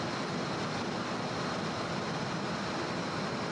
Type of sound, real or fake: real